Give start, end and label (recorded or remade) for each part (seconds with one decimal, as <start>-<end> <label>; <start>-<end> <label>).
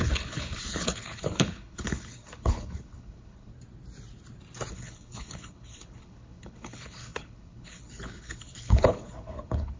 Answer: 0.0-3.5 remade; 3.5-4.7 recorded; 4.7-9.8 remade